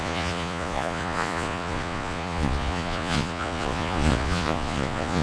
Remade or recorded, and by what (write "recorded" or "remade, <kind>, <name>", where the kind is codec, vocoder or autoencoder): remade, vocoder, Vocos